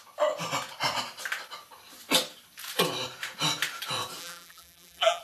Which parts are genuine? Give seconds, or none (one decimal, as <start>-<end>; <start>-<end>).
0.0-4.2